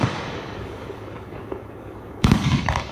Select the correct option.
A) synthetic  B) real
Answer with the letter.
A